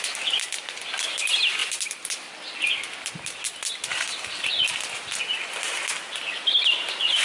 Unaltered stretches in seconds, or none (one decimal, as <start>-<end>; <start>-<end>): 0.0-7.2